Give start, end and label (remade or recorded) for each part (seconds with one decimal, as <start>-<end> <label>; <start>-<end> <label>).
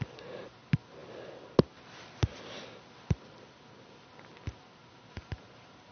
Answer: 0.0-5.9 recorded